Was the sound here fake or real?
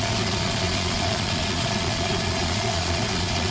fake